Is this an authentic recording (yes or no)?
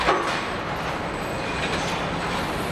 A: yes